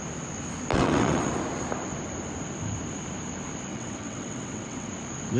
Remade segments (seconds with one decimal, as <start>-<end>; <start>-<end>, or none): 0.7-1.3; 3.7-4.9